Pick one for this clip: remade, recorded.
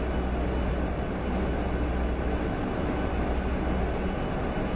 recorded